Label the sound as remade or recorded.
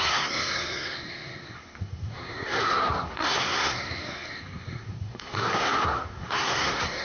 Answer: remade